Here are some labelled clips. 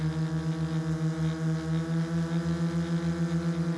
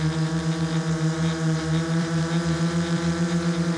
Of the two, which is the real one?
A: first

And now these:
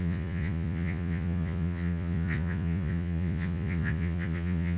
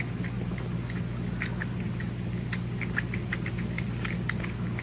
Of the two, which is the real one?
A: second